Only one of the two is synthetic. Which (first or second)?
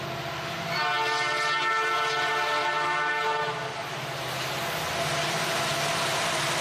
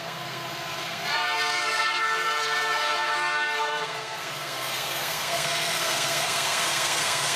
second